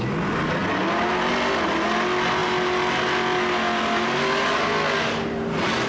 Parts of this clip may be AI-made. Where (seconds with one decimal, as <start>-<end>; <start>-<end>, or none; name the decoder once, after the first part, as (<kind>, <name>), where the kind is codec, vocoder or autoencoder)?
none